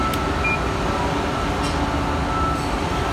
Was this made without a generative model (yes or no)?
yes